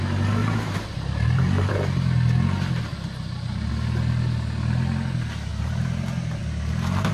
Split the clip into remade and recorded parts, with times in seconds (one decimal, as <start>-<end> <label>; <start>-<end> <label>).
0.0-0.4 recorded; 0.4-1.7 remade; 1.7-2.9 recorded; 2.9-3.7 remade; 3.7-5.5 recorded; 5.5-6.4 remade; 6.4-7.1 recorded